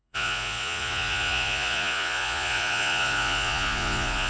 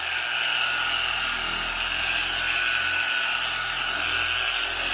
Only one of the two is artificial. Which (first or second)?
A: first